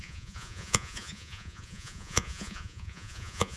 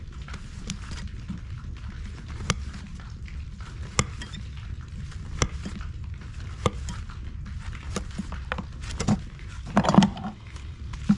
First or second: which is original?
second